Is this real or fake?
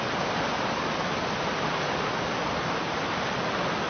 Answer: real